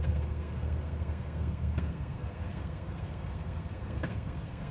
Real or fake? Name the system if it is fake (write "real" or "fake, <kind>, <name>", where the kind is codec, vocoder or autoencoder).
fake, codec, SNAC